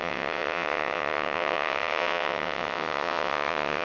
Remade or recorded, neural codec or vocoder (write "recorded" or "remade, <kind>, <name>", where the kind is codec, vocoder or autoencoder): remade, vocoder, WaveNeXt